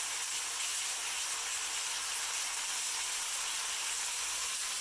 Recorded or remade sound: remade